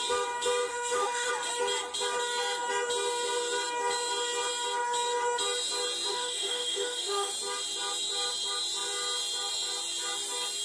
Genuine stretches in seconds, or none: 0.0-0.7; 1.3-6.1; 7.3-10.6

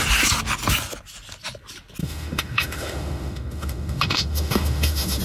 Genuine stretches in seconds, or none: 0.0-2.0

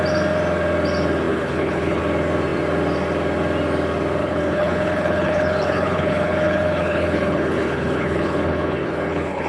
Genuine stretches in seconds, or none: 0.0-1.3; 2.0-4.2